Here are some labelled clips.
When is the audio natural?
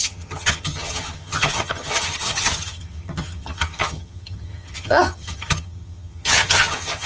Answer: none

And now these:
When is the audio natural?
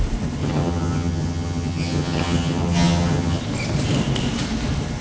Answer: 0.0-0.4; 3.4-5.0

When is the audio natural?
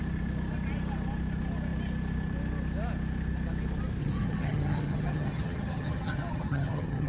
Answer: 0.0-4.0